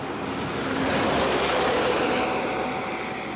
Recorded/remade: recorded